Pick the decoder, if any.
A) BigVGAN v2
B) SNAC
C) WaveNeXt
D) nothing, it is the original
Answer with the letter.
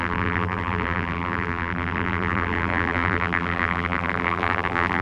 A